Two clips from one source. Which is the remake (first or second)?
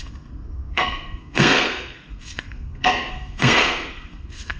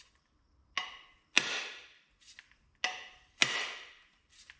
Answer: first